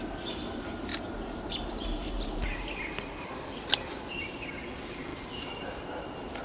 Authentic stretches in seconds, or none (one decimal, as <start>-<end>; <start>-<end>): 0.0-6.4